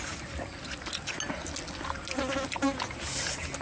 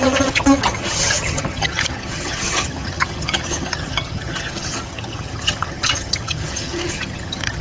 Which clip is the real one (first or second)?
first